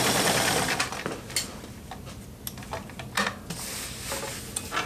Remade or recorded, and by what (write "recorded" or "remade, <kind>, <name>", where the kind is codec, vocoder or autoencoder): recorded